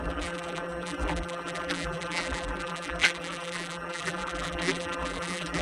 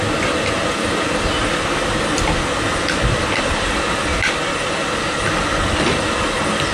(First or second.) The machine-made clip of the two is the first